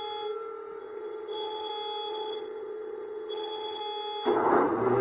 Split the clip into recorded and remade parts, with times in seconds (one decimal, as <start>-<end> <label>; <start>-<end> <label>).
0.0-0.8 recorded; 0.8-1.7 remade; 1.7-2.1 recorded; 2.1-3.8 remade; 3.8-5.0 recorded